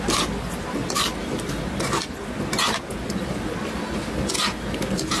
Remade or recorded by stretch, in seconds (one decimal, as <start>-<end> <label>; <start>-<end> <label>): 0.0-5.2 recorded